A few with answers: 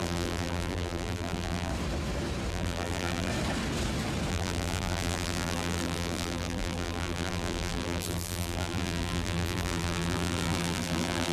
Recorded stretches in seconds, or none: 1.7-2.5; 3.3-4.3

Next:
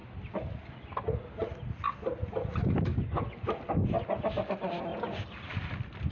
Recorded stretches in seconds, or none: 0.0-6.1

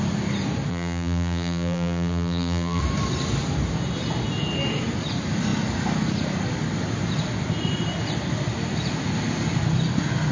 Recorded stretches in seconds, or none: 0.0-0.7; 2.8-10.3

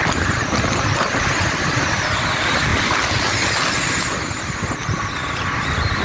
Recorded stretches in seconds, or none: 0.0-6.0

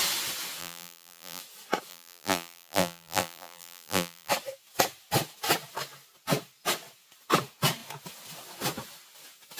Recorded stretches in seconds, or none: 0.0-0.6; 1.4-1.9; 4.3-9.6

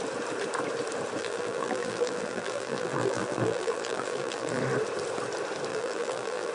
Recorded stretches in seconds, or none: 0.0-1.2; 4.6-5.7

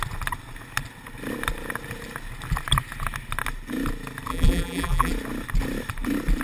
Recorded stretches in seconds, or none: 0.0-4.3; 5.1-6.4